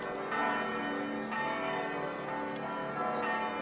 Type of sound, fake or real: real